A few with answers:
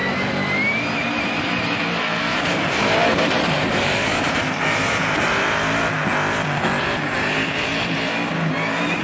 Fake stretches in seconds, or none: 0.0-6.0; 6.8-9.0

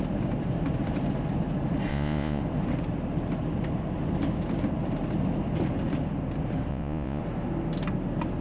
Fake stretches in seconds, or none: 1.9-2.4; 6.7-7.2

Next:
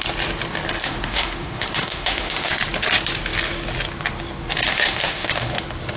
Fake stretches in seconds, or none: 0.8-2.5; 4.7-5.5

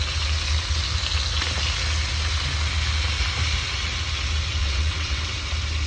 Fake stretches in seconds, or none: 4.6-5.2